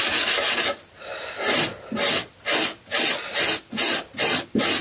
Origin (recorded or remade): recorded